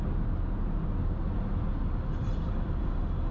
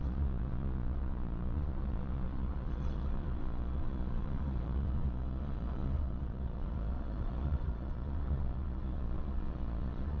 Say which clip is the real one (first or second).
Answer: first